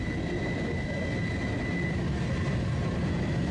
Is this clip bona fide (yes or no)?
yes